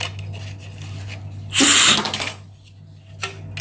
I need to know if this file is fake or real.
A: real